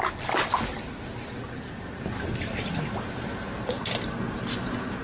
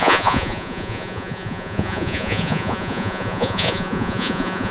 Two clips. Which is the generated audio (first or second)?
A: second